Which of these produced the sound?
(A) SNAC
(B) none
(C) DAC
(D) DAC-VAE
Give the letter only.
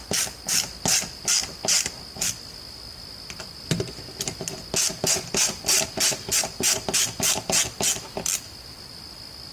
B